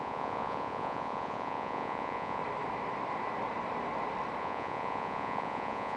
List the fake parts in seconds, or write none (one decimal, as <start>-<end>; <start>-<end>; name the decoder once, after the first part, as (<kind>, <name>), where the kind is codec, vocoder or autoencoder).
0.0-2.4 (vocoder, Vocos); 4.4-6.0